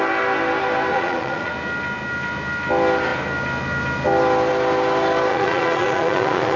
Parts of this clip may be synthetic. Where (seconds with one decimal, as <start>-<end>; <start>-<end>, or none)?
0.9-1.5; 5.3-6.6